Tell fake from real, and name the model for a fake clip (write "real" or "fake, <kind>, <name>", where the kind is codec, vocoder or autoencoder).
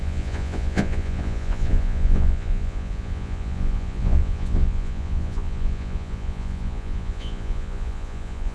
fake, vocoder, Vocos